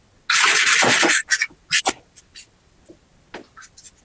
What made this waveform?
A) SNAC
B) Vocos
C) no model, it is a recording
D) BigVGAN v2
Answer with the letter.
C